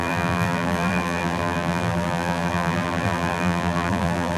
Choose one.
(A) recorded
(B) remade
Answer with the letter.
B